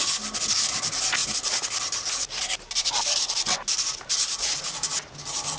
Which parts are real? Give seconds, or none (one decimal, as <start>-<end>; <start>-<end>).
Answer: 0.0-5.6